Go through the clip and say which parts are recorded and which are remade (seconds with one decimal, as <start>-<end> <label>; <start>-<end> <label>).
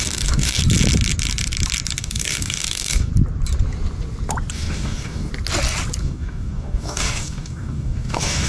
0.0-0.6 remade; 0.6-2.0 recorded; 2.0-3.1 remade; 3.1-4.5 recorded; 4.5-5.3 remade; 5.3-6.0 recorded; 6.0-8.5 remade